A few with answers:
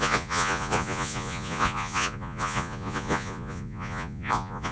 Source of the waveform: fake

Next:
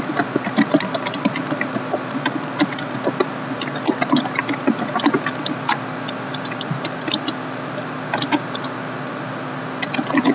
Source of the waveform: real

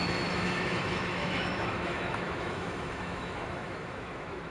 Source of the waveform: fake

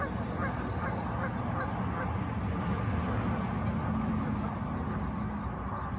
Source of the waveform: real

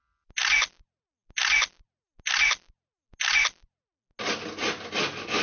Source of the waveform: real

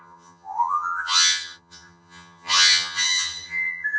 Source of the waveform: fake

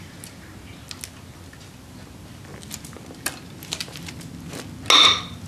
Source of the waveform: real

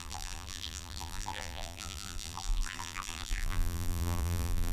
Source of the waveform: fake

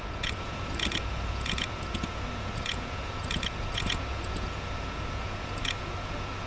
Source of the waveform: fake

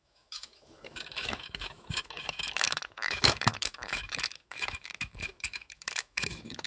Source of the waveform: fake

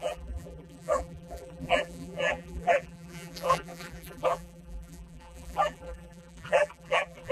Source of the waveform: fake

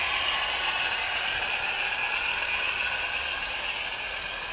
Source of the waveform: real